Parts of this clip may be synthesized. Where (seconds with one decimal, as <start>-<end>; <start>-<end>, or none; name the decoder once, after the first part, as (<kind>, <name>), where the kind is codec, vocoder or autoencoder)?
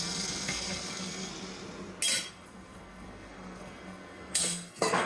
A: 0.0-1.3 (codec, SNAC); 2.3-5.1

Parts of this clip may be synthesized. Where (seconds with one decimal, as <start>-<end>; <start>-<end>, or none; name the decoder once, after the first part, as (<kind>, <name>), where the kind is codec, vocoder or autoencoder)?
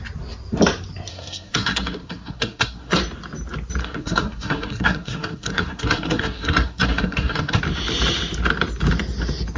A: 1.1-3.0 (codec, SNAC); 3.8-7.6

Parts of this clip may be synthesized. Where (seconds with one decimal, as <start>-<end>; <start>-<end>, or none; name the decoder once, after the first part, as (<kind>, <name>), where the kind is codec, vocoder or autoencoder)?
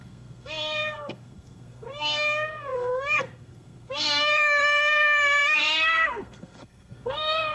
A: 0.0-7.5 (codec, SNAC)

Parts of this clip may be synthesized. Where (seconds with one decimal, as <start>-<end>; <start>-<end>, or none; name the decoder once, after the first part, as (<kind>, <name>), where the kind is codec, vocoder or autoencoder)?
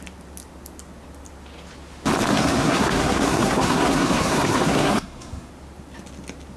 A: 2.3-5.5 (codec, SNAC)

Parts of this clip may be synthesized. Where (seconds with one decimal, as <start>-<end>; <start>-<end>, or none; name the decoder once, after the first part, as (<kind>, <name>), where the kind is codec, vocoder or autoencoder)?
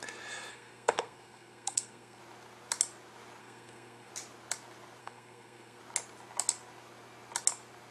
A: 0.5-2.2 (codec, SNAC); 3.4-4.1; 5.0-5.8